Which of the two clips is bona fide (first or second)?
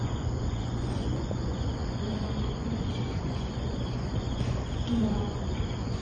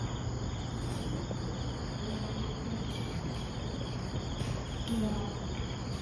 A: second